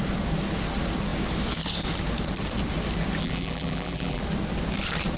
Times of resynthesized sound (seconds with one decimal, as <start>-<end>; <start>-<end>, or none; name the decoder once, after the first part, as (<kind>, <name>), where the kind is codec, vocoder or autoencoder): 3.2-4.2 (vocoder, BigVGAN v2)